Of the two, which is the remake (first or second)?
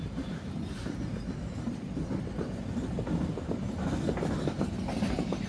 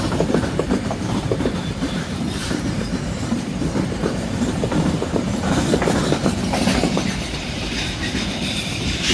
second